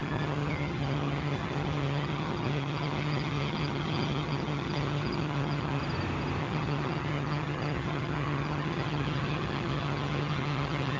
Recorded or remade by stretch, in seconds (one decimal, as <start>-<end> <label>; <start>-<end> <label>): 0.0-5.8 remade; 5.8-6.4 recorded; 6.4-11.0 remade